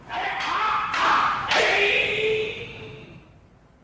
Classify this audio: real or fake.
real